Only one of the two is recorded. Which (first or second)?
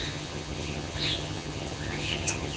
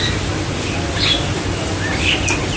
second